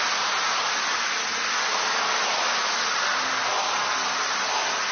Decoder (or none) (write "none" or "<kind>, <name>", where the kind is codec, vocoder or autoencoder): none